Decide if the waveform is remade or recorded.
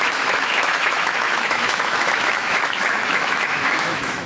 remade